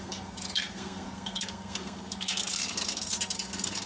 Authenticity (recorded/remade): remade